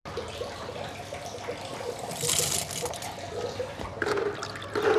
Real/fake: real